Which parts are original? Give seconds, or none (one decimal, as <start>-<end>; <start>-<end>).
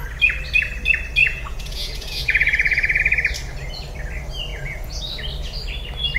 0.0-1.2; 3.0-4.5; 5.0-6.2